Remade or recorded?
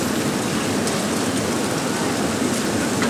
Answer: recorded